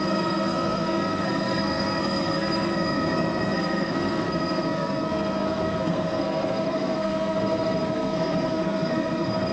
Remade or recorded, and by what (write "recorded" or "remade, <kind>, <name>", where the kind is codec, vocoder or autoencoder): remade, codec, SNAC